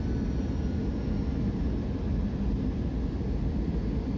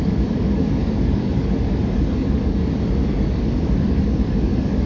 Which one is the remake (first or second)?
second